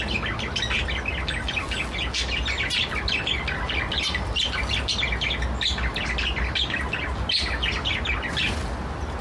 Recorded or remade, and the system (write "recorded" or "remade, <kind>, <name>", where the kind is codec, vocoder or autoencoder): recorded